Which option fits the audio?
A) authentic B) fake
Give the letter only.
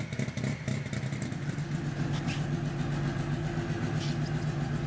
A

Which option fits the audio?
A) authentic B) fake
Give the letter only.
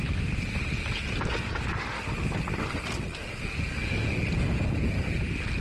A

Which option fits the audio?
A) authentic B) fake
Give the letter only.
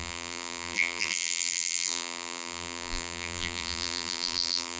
B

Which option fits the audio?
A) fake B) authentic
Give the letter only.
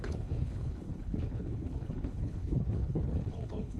A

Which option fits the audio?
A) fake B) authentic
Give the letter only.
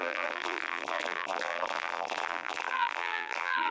A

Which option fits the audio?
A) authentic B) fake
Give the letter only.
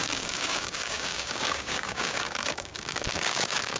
B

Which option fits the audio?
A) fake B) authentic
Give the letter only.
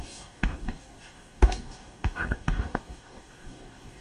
A